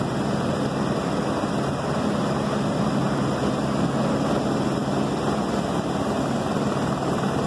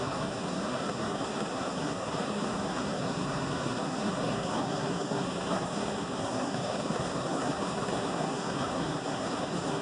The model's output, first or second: second